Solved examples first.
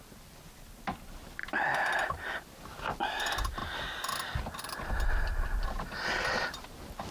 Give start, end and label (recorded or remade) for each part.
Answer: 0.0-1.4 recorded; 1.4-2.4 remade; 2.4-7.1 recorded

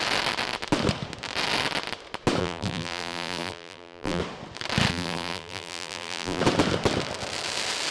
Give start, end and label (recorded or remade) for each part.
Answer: 0.0-2.4 recorded; 2.4-4.2 remade; 4.2-4.9 recorded; 4.9-6.4 remade; 6.4-7.9 recorded